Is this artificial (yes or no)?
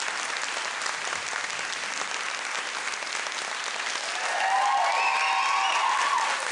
no